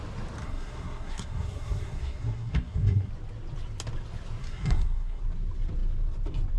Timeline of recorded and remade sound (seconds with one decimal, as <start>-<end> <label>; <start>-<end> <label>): 0.0-0.4 recorded; 0.4-3.1 remade; 3.1-4.4 recorded; 4.4-5.2 remade; 5.2-6.6 recorded